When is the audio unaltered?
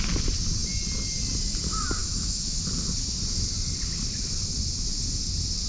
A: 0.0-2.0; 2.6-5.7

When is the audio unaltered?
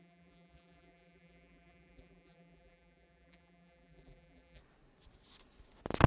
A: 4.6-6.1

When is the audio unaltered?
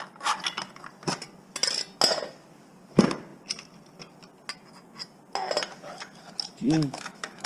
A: 0.0-6.6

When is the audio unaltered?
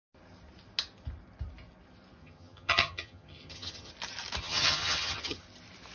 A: 0.0-2.2; 3.9-4.4; 5.4-5.9